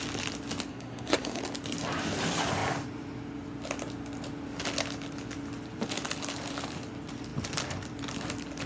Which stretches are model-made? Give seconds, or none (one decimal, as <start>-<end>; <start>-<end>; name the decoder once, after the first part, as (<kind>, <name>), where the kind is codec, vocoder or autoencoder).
0.7-1.4 (codec, SNAC)